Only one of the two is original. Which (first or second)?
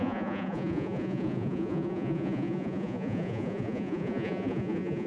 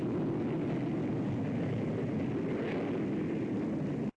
second